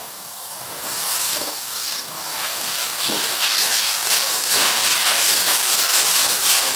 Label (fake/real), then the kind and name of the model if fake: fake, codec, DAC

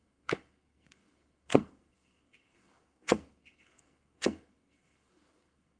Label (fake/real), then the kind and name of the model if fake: fake, codec, SNAC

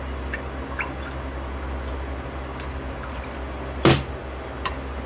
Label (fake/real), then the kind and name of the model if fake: real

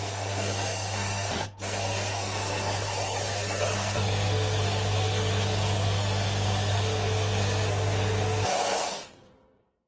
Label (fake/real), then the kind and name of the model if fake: fake, codec, SNAC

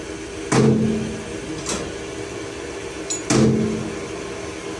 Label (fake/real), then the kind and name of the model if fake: real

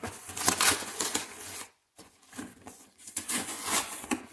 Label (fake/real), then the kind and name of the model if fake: fake, vocoder, Vocos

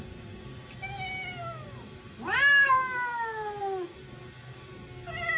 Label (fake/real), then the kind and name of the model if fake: real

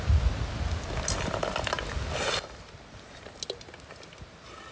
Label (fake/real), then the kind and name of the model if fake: real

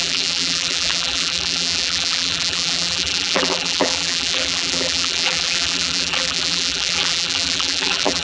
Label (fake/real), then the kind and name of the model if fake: fake, vocoder, BigVGAN v2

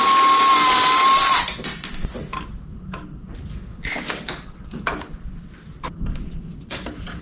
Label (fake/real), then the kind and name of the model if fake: real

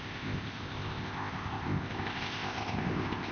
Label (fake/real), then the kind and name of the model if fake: fake, codec, ZipCodec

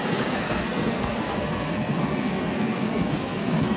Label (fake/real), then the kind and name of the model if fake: fake, codec, SNAC